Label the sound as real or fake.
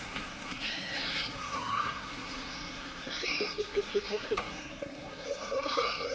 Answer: fake